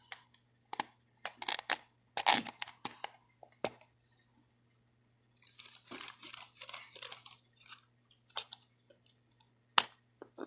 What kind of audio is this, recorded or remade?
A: recorded